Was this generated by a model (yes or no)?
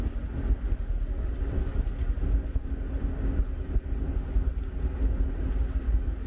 no